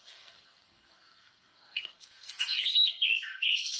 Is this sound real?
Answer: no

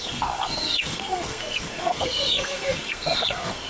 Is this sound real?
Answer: no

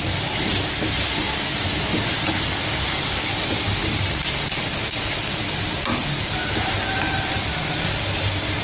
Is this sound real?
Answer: yes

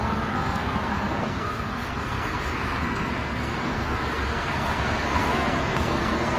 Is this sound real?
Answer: no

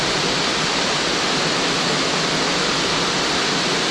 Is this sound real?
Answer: yes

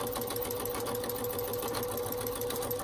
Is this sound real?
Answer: yes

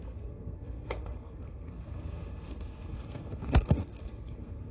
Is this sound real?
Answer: no